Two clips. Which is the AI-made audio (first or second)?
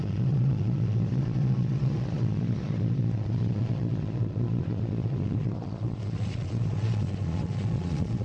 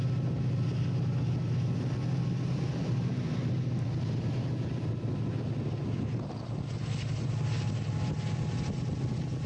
first